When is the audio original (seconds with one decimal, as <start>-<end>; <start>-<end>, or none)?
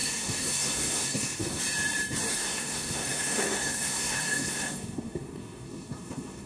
1.6-2.3